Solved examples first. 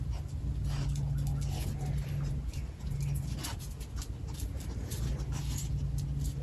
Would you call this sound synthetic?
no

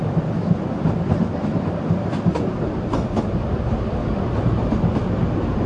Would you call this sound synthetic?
no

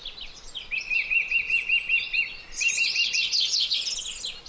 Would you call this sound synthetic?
no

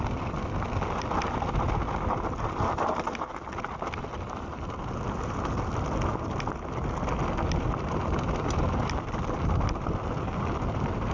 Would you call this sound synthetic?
no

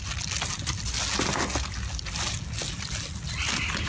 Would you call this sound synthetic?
no